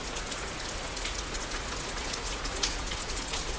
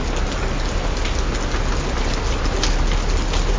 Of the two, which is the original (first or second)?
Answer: second